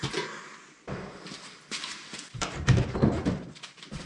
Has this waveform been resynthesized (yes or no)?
yes